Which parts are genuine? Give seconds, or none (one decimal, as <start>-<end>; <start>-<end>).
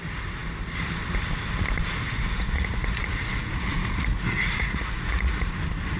0.0-2.1; 5.5-6.0